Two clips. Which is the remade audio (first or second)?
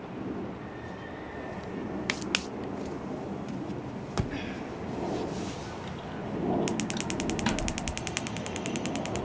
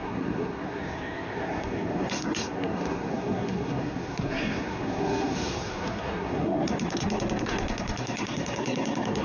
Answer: second